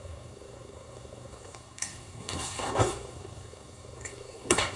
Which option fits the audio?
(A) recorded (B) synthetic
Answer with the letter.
B